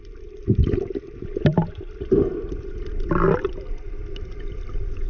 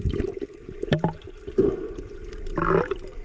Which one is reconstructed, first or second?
first